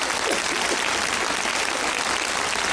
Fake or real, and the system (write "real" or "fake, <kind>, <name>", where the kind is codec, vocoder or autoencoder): real